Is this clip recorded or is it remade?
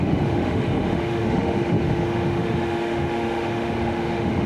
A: remade